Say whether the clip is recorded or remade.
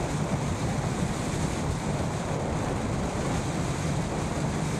remade